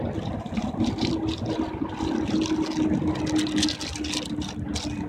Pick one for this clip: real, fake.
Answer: real